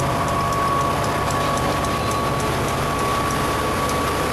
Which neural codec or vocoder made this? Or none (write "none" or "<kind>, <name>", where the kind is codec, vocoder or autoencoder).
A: none